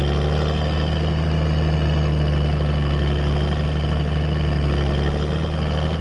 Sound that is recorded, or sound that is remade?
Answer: recorded